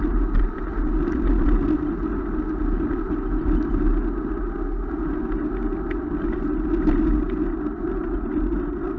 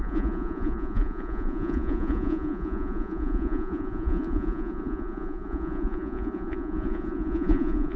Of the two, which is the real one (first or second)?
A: first